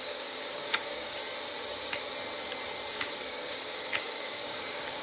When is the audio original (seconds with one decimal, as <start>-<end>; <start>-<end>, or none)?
1.2-2.9